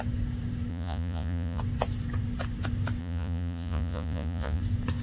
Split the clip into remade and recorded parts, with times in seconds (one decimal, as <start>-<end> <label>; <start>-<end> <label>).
0.0-0.7 recorded; 0.7-1.6 remade; 1.6-3.0 recorded; 3.0-4.6 remade; 4.6-5.0 recorded

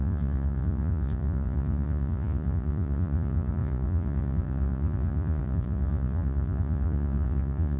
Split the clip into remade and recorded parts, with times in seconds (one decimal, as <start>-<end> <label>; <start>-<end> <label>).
0.0-7.8 remade

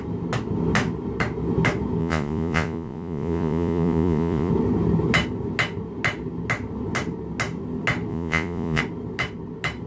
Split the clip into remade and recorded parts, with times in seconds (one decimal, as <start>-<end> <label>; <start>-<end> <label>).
0.0-2.0 recorded; 2.0-4.5 remade; 4.5-8.1 recorded; 8.1-8.8 remade; 8.8-9.9 recorded

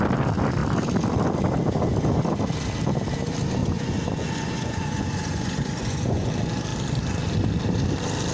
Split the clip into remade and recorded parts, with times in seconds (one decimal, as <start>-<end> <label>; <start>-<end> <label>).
0.0-3.6 recorded; 3.6-6.3 remade; 6.3-8.3 recorded